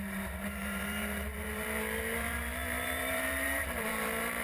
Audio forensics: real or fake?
fake